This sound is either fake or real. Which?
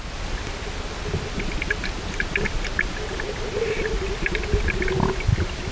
real